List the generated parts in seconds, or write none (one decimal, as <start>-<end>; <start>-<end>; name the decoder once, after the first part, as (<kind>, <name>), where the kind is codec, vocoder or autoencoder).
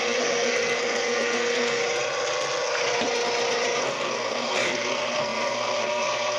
0.0-1.8 (codec, SNAC); 3.8-6.4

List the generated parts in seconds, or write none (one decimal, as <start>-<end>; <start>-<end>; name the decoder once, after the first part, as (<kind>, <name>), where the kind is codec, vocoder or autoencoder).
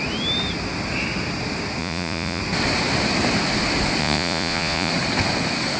1.8-2.4 (vocoder, Vocos); 4.0-4.9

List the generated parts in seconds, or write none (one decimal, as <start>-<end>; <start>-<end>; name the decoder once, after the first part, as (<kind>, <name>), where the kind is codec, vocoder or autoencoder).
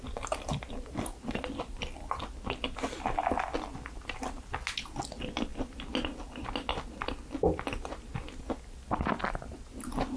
none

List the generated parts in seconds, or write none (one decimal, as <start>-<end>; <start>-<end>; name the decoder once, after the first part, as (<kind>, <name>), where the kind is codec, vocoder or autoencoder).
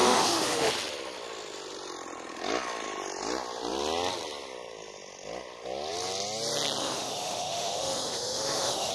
0.0-0.7 (autoencoder, DAC-VAE); 6.8-8.9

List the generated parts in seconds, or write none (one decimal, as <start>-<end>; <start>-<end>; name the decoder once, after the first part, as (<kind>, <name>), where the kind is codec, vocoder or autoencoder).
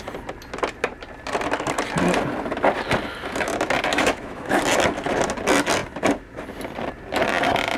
3.9-4.6 (autoencoder, DAC-VAE)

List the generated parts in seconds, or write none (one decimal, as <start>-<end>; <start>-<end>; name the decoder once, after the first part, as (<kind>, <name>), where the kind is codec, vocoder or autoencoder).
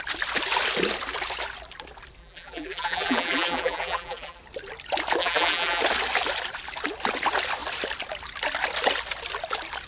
2.2-4.4 (vocoder, BigVGAN v2); 5.2-5.8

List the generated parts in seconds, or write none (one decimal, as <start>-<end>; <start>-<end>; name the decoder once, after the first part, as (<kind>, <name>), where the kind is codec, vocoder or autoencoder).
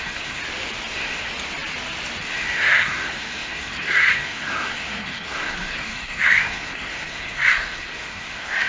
0.0-0.4 (codec, SNAC); 0.9-1.3; 2.2-8.7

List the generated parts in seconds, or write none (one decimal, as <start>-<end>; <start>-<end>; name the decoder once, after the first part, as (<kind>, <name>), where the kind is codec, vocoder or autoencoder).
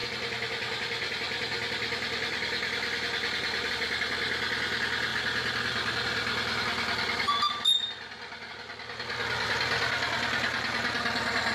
none